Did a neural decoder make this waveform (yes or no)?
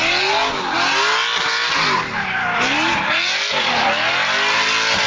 no